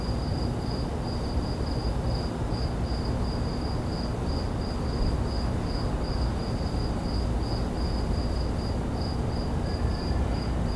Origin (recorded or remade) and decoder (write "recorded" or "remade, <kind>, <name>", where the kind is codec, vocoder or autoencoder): recorded